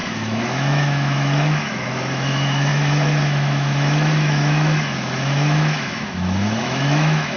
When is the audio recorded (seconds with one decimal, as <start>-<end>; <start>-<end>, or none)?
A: none